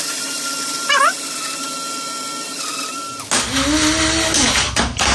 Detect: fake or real real